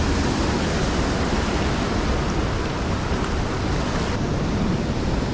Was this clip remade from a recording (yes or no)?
no